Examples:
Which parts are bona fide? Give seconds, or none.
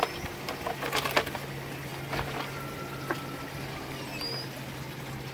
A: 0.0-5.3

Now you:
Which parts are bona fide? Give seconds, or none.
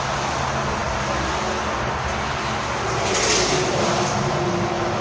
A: 0.0-5.0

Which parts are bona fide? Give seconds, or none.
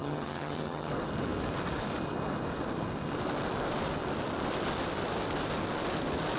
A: 0.9-6.4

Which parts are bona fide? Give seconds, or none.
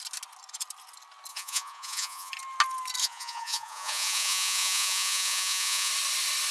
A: 0.0-1.3; 2.3-3.0; 5.9-6.5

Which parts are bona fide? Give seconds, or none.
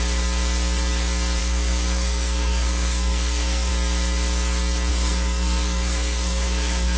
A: 0.0-1.4; 3.7-4.9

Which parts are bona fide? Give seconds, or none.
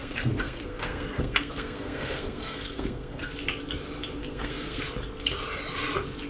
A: 3.3-4.2; 4.8-6.3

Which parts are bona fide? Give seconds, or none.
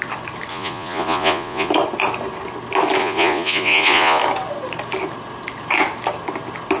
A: 0.0-0.5; 1.7-3.0; 4.2-6.8